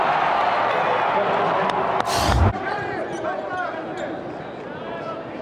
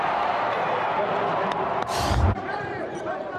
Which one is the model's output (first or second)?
second